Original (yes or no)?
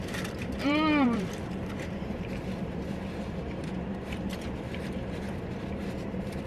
no